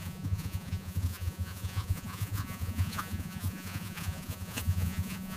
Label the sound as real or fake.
fake